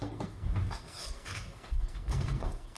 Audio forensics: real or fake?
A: fake